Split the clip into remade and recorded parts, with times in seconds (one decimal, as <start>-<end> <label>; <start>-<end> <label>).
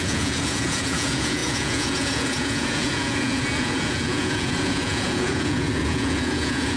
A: 0.0-6.8 remade